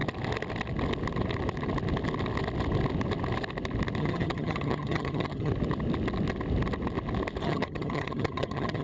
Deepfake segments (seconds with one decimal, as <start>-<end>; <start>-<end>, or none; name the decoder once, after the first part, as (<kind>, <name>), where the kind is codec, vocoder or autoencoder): 4.0-5.5 (vocoder, HiFi-GAN); 7.4-8.8